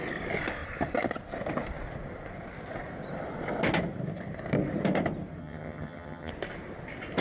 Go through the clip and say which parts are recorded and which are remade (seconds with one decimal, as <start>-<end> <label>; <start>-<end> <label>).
0.0-5.4 recorded; 5.4-6.3 remade; 6.3-7.2 recorded